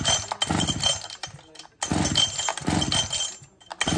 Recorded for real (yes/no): yes